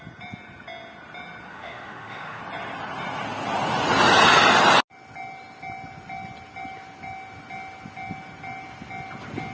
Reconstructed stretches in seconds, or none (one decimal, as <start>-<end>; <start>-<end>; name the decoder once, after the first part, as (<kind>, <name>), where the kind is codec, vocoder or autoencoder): 1.5-2.4 (autoencoder, DAC-VAE)